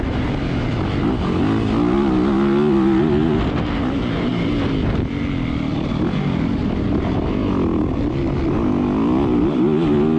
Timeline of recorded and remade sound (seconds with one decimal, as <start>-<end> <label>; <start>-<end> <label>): 0.0-10.2 recorded